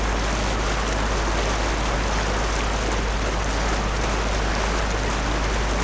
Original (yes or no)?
yes